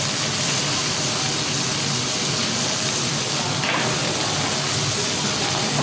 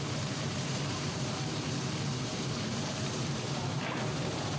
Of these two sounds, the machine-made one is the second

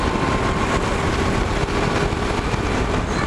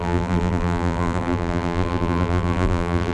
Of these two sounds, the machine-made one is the second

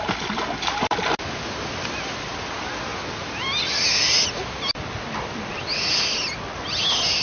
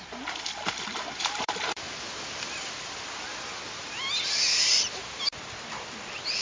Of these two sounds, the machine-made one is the second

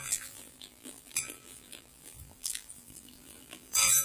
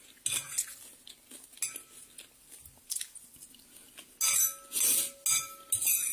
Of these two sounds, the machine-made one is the first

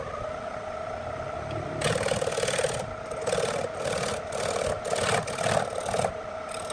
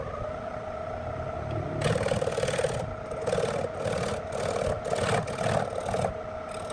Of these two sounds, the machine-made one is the first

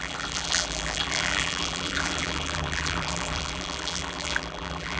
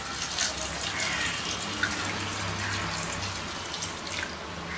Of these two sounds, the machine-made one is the first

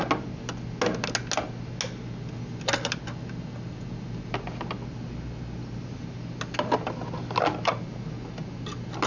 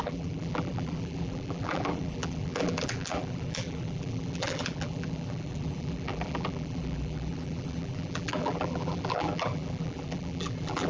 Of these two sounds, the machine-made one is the second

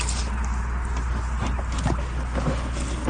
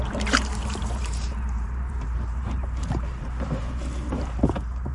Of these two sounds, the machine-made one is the second